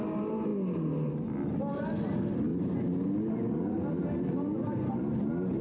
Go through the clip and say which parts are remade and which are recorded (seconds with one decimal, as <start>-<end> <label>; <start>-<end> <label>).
0.0-5.6 recorded

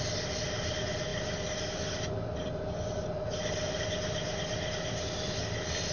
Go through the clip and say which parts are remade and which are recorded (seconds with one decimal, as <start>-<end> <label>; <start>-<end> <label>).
0.0-5.9 recorded

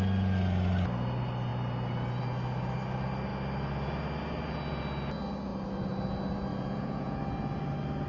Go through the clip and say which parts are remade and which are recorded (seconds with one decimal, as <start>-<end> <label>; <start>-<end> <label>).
0.0-6.5 recorded; 6.5-7.2 remade; 7.2-8.1 recorded

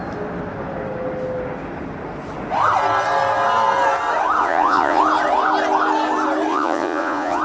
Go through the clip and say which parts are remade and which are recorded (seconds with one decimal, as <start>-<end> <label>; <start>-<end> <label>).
0.0-4.4 recorded; 4.4-5.0 remade; 5.0-6.5 recorded; 6.5-7.4 remade

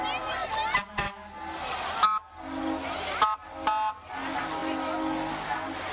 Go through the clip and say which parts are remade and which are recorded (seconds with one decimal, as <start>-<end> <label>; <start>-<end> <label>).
0.0-5.9 recorded

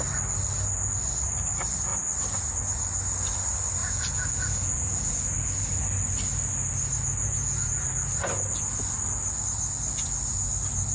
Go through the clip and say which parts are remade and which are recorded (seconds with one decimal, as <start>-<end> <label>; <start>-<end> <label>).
0.0-3.8 recorded; 3.8-5.1 remade; 5.1-7.2 recorded; 7.2-7.8 remade; 7.8-10.9 recorded

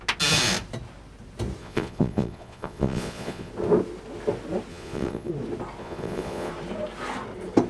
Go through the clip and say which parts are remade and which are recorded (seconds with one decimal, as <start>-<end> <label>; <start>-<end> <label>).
0.0-1.6 recorded; 1.6-3.5 remade; 3.5-4.7 recorded; 4.7-5.3 remade; 5.3-5.8 recorded; 5.8-6.5 remade; 6.5-7.7 recorded